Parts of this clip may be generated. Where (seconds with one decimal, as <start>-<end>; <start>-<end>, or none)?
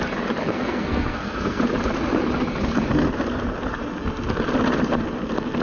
0.4-1.6